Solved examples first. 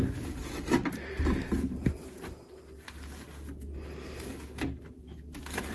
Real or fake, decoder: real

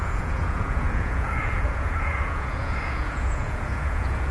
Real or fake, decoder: fake, vocoder, Vocos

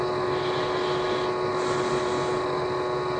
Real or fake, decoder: real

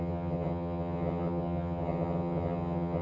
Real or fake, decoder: fake, vocoder, HiFi-GAN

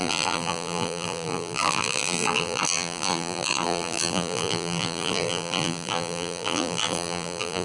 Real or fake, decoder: fake, vocoder, BigVGAN v2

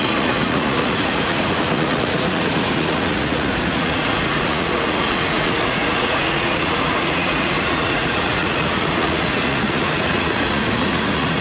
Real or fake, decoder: fake, vocoder, Vocos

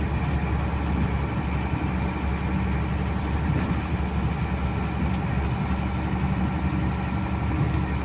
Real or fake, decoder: real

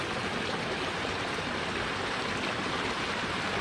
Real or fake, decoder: real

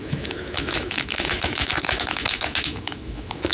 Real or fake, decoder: fake, autoencoder, DAC-VAE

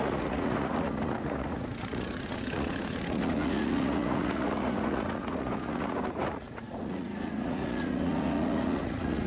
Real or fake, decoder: fake, vocoder, Vocos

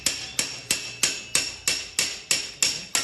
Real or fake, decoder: real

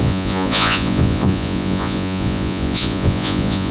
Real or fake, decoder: fake, vocoder, Vocos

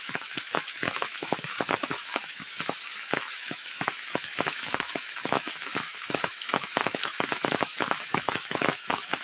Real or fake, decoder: fake, autoencoder, DAC-VAE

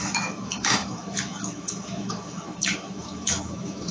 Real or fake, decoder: fake, autoencoder, DAC-VAE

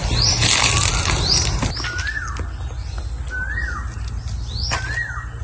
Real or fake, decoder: real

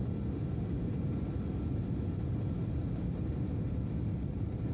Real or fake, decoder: real